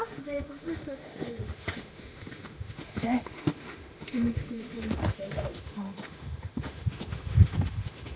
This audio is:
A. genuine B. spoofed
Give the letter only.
B